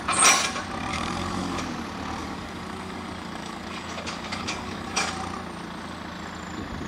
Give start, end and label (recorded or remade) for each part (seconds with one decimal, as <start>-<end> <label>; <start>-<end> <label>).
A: 0.0-0.9 recorded; 0.9-1.6 remade; 1.6-2.2 recorded; 2.2-5.1 remade; 5.1-6.9 recorded